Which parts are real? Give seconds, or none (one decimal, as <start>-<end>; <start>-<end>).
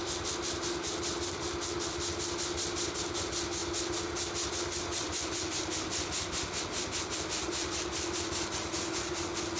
0.0-9.6